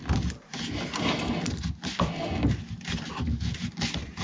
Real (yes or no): yes